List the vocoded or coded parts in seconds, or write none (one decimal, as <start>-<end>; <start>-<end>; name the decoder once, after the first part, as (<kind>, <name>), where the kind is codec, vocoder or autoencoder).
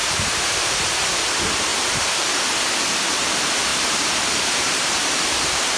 0.0-0.6 (vocoder, BigVGAN v2); 1.7-2.4; 3.7-5.8